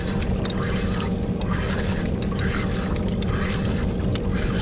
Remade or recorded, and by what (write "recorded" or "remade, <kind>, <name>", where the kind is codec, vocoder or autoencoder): recorded